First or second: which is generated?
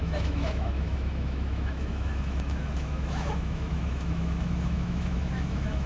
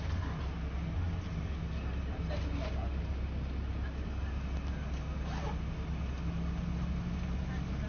first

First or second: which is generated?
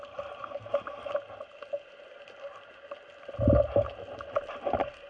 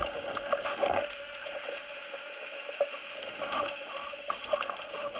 second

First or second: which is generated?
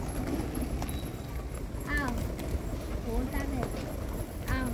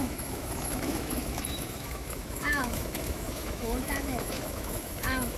second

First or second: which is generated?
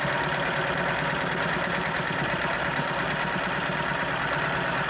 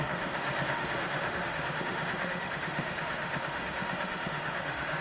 second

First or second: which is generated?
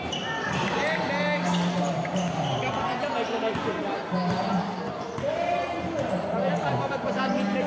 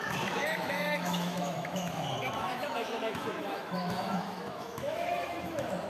second